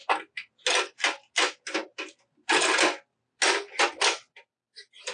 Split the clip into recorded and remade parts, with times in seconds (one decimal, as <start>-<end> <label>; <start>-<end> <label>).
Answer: 0.0-5.1 recorded